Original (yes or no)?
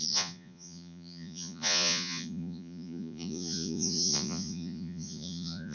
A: no